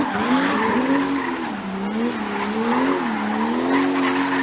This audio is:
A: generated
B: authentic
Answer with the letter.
B